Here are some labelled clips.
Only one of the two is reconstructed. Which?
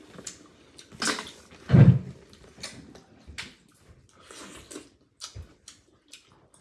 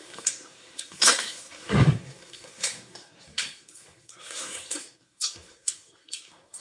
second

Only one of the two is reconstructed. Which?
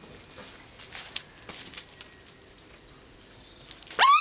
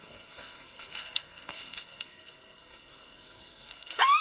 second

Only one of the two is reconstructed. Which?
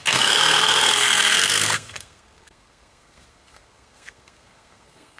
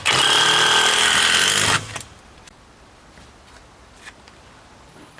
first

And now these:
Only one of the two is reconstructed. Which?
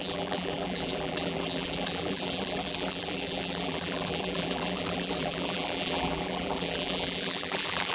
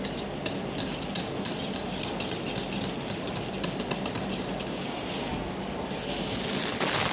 first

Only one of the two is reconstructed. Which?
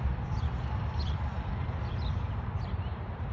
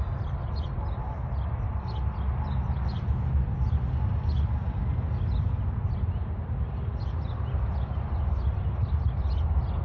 first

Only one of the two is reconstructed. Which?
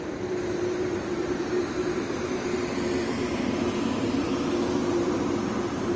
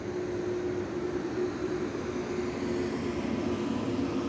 first